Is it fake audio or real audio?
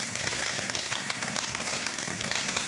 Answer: fake